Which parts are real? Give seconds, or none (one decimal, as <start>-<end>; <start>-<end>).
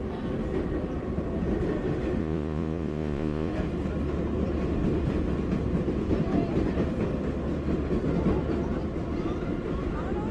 0.0-2.2; 3.5-10.3